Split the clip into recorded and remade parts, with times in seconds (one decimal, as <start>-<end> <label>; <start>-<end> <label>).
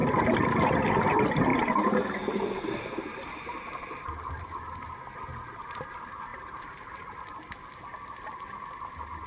0.0-1.5 recorded; 1.5-4.4 remade; 4.4-6.3 recorded; 6.3-7.1 remade; 7.1-9.3 recorded